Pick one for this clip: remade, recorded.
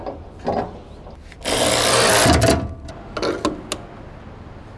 recorded